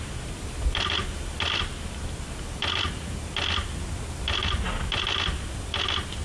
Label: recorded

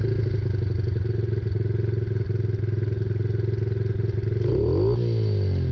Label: recorded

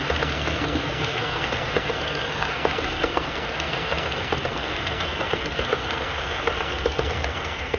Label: remade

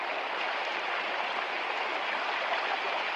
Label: recorded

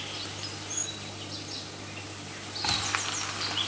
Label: recorded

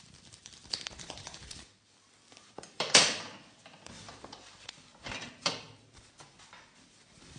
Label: remade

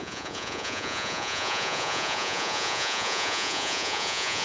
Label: remade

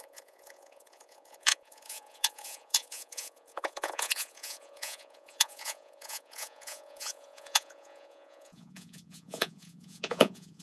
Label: remade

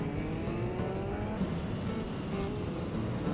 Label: recorded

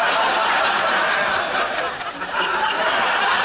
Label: recorded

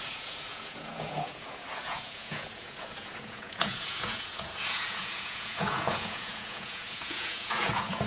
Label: remade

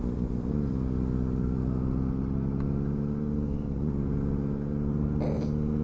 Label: recorded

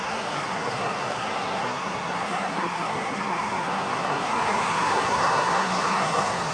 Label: remade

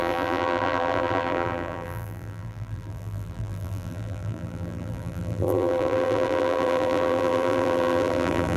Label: remade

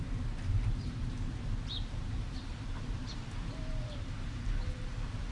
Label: remade